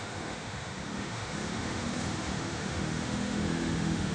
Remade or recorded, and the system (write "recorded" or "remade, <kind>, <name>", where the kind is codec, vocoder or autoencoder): remade, autoencoder, DAC-VAE